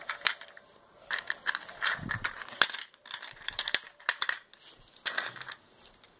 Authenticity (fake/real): fake